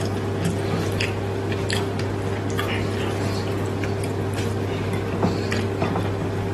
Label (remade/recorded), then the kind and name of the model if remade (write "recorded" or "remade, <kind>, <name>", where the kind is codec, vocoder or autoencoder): recorded